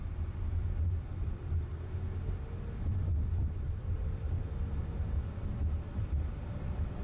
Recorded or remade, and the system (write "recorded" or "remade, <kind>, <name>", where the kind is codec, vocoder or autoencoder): recorded